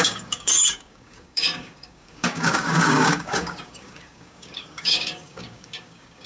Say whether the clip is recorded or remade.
remade